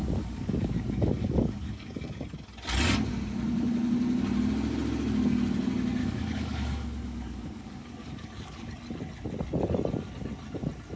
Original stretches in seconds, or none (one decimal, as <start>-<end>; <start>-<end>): 2.2-6.0; 8.7-11.0